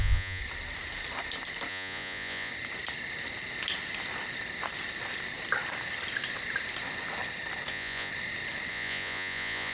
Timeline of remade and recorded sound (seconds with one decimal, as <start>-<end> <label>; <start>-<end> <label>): 0.0-0.4 remade; 0.4-1.7 recorded; 1.7-2.5 remade; 2.5-7.7 recorded; 7.7-8.1 remade; 8.1-8.7 recorded; 8.7-9.7 remade